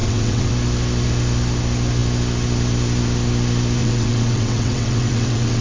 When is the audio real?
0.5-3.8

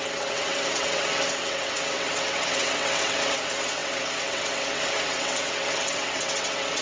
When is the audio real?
none